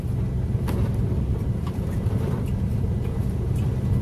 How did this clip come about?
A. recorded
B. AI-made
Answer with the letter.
A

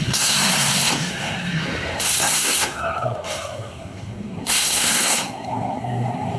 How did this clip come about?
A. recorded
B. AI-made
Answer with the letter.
B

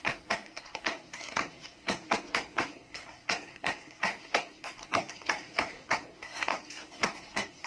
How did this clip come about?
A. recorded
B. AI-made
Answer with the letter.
B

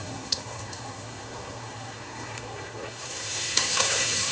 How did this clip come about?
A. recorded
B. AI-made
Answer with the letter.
B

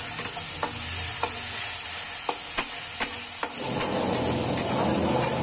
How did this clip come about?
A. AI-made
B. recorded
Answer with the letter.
B